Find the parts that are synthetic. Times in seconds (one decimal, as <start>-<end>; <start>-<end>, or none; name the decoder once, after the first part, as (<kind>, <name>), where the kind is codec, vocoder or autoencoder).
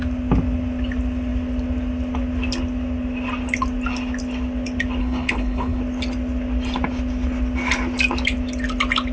5.0-5.8 (codec, HILCodec)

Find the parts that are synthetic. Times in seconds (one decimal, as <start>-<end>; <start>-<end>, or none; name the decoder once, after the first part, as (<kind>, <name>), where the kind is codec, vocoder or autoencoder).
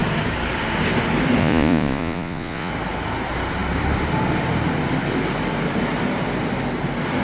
1.4-2.7 (vocoder, Vocos)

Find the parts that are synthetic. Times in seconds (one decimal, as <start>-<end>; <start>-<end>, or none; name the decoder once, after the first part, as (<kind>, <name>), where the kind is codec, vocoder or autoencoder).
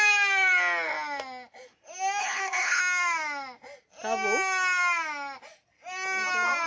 2.2-2.8 (codec, HILCodec)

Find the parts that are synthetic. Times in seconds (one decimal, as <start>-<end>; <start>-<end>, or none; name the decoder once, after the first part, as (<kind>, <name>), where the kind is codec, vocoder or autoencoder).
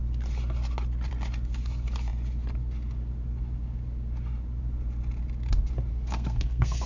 5.9-6.9 (codec, SNAC)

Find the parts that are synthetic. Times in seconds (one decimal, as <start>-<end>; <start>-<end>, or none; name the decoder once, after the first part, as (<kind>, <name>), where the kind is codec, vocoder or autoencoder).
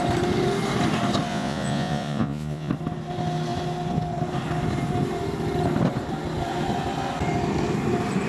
1.3-2.7 (vocoder, Vocos)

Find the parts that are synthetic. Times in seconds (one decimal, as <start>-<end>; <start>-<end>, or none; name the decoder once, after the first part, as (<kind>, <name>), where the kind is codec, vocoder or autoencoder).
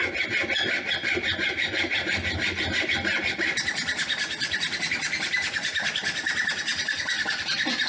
none